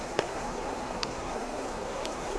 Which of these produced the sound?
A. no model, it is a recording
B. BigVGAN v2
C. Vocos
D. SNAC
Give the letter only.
D